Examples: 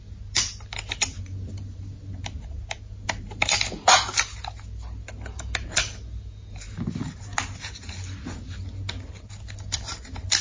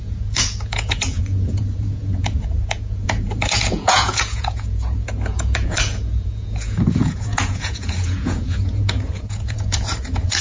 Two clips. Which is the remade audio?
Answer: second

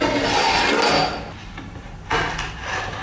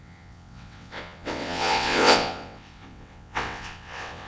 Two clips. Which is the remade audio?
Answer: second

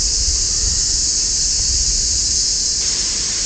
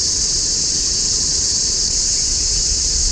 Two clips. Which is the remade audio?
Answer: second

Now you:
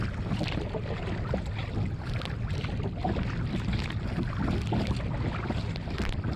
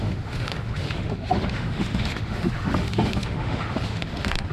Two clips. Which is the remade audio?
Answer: second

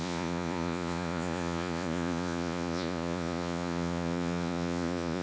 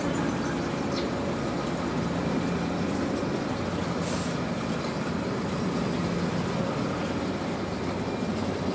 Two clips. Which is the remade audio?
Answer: first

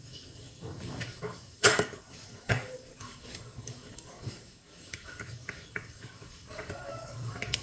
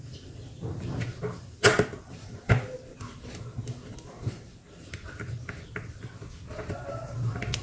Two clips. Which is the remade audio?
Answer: first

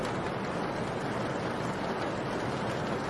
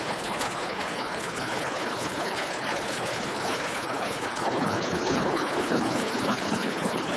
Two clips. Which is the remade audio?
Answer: second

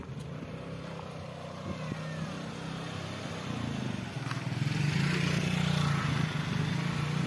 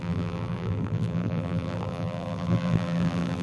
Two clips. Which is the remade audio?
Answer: second